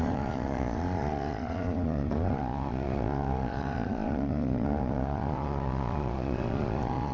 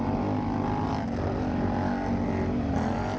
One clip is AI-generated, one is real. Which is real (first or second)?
second